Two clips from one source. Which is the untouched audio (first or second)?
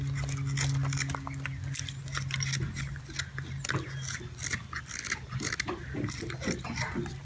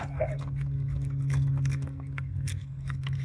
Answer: first